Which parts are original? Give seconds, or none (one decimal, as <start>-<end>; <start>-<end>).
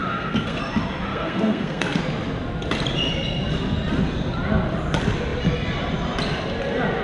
0.6-1.1; 2.0-7.0